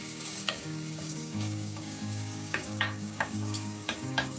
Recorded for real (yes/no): no